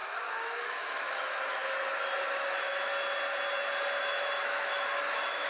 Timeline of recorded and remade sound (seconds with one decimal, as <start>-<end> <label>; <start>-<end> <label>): 0.0-1.6 remade; 1.6-2.4 recorded; 2.4-2.9 remade; 2.9-4.0 recorded; 4.0-5.5 remade